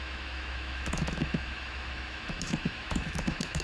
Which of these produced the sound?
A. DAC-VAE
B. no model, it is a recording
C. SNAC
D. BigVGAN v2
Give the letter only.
A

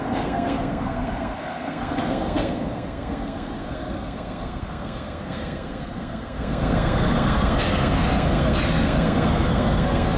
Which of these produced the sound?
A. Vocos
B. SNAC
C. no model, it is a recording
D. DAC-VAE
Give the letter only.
B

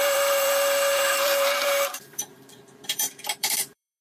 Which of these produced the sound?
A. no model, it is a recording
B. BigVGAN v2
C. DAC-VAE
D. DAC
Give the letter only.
B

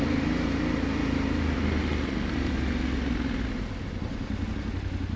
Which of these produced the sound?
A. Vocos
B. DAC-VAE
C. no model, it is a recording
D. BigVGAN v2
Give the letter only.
C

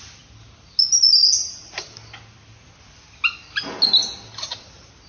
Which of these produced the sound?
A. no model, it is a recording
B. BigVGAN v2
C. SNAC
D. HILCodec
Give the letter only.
A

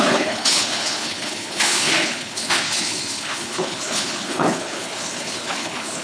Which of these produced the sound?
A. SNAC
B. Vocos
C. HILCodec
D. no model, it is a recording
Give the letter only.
C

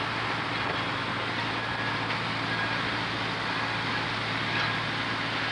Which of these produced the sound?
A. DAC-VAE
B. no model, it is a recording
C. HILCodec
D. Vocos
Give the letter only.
B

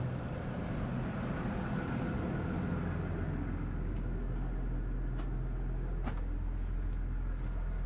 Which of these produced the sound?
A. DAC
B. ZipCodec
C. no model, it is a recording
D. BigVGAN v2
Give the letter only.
C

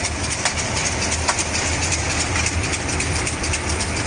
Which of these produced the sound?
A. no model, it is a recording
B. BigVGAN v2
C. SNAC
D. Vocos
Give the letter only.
A